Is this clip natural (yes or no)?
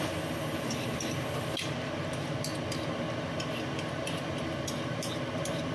yes